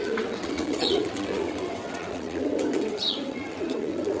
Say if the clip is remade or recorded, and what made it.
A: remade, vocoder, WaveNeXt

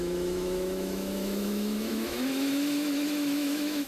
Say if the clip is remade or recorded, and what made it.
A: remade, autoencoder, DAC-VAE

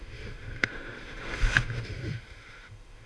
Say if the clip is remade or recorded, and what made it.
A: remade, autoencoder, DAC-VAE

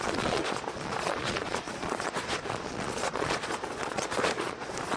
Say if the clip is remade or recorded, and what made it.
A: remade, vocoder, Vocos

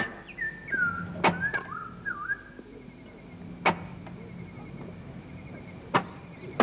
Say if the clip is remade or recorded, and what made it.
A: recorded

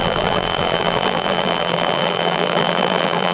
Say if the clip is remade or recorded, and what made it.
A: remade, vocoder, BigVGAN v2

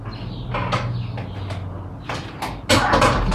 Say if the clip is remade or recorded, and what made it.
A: recorded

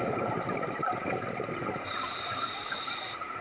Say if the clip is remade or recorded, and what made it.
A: remade, vocoder, BigVGAN v2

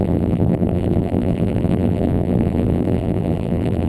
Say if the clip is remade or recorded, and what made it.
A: remade, vocoder, BigVGAN v2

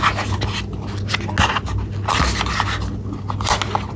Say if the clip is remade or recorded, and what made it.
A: recorded